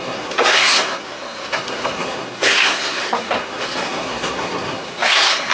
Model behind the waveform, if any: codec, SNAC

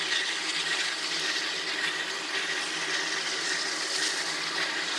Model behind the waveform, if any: none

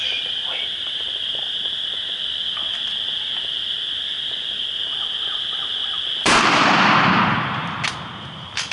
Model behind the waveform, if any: vocoder, BigVGAN v2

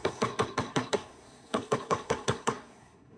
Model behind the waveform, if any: codec, SNAC